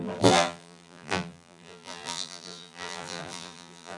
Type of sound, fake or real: fake